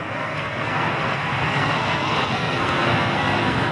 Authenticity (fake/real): fake